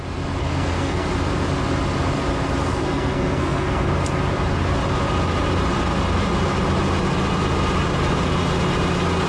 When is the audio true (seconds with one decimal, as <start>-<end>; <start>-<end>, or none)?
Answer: 0.0-0.4; 1.1-2.6; 3.9-9.3